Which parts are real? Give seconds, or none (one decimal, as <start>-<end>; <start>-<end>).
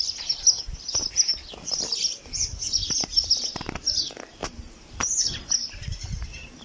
0.0-6.6